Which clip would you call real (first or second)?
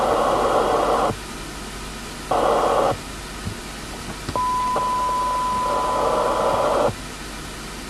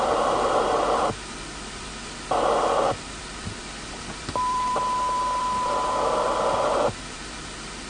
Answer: first